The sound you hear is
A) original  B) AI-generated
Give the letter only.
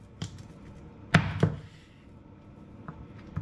A